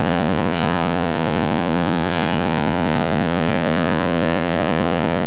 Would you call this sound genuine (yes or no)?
no